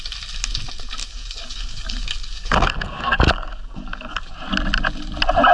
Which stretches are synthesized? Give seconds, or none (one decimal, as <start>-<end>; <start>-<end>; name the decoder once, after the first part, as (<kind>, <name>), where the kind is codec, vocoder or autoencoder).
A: 1.0-4.3 (codec, DAC)